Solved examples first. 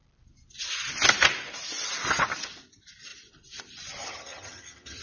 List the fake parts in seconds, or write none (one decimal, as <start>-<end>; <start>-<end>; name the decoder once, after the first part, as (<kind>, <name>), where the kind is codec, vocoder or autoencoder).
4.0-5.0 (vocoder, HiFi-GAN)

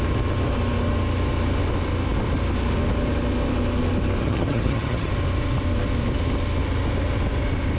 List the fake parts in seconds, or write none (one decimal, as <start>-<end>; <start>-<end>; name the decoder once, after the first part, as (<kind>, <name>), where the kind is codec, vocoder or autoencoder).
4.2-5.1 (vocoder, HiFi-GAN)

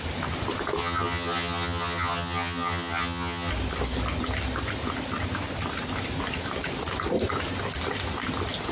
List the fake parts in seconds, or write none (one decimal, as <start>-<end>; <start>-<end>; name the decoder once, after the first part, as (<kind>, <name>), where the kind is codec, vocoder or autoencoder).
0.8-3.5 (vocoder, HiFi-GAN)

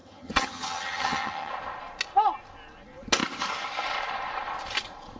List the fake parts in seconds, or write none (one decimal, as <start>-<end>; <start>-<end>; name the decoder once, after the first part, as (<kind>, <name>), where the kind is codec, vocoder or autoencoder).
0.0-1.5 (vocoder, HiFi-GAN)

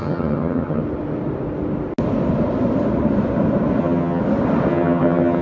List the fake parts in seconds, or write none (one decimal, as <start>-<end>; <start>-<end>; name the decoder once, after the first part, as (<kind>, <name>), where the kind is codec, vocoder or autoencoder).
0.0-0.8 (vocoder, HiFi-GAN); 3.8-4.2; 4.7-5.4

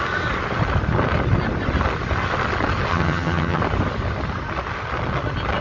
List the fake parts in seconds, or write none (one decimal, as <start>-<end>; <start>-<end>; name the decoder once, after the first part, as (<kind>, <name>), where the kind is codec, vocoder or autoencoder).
2.9-3.6 (vocoder, HiFi-GAN)

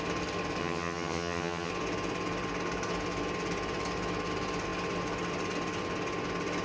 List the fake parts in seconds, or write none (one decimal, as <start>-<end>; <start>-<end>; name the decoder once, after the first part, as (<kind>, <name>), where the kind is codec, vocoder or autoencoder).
0.6-1.7 (vocoder, HiFi-GAN)